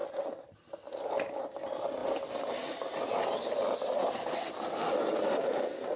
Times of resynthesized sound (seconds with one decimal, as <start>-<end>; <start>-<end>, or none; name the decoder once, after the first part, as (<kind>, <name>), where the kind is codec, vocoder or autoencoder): none